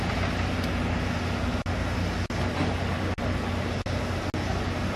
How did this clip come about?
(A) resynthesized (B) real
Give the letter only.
B